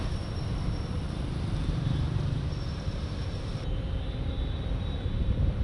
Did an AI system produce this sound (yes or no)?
yes